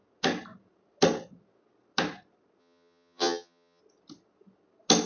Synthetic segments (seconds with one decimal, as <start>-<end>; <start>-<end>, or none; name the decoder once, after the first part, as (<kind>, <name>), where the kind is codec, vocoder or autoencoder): 2.6-3.8 (vocoder, HiFi-GAN)